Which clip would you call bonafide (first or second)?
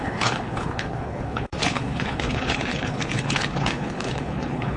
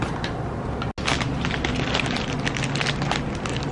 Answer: second